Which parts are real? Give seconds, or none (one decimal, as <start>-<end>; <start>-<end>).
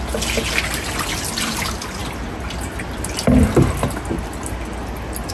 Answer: 0.0-5.3